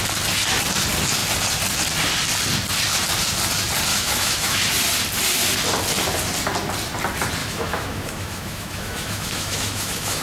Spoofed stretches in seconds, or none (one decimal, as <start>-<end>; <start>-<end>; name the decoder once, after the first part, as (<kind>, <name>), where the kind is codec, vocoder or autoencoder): 3.9-4.6 (autoencoder, DAC-VAE); 7.4-10.2